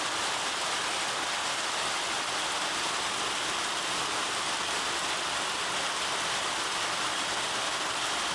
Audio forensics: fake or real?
real